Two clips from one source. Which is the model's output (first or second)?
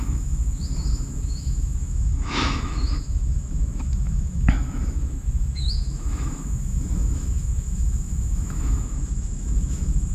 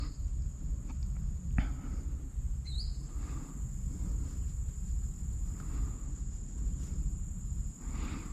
first